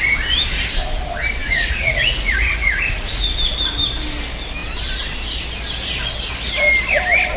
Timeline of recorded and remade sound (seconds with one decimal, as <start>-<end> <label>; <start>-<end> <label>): 0.0-1.4 recorded; 1.4-3.3 remade; 3.3-7.4 recorded